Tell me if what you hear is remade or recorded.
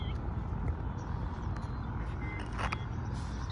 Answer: recorded